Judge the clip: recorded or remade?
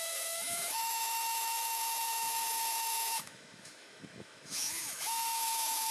remade